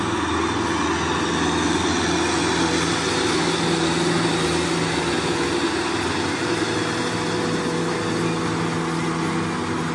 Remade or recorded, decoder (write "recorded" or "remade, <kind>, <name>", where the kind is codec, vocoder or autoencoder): recorded